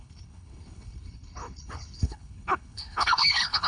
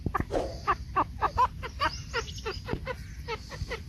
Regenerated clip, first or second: first